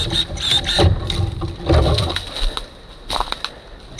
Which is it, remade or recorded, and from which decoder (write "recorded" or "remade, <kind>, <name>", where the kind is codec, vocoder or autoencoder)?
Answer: remade, vocoder, BigVGAN v2